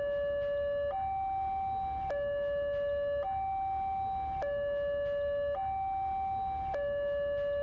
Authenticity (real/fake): real